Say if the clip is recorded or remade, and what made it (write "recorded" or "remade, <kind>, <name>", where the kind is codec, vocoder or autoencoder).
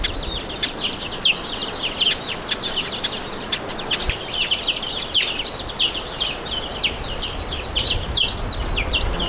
recorded